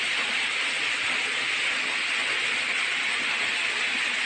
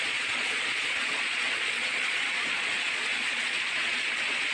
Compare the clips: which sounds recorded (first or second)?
first